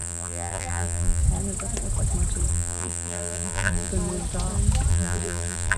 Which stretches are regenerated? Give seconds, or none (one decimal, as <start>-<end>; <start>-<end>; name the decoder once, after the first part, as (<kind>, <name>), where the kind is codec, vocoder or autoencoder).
0.0-1.2 (vocoder, BigVGAN v2); 2.5-3.9; 4.9-5.8